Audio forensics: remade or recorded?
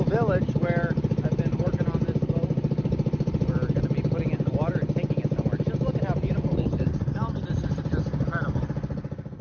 recorded